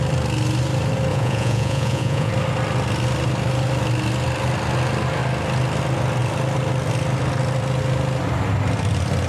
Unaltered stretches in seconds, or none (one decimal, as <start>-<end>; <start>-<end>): 0.0-1.1; 2.3-9.3